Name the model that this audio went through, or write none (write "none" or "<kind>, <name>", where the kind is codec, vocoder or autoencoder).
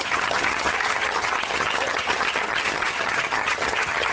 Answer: vocoder, HiFi-GAN